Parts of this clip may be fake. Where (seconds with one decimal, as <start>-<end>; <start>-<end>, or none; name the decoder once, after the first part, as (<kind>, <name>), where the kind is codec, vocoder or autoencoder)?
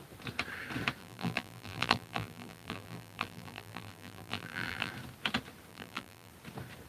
1.0-4.9 (vocoder, BigVGAN v2); 5.7-6.3